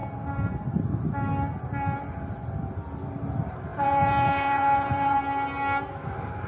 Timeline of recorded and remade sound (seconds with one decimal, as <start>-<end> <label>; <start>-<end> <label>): 0.0-3.7 recorded; 3.7-5.2 remade; 5.2-6.5 recorded